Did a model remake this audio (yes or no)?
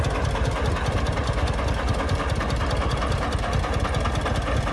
no